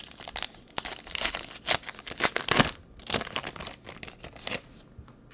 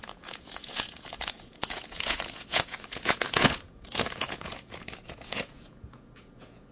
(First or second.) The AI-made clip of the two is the second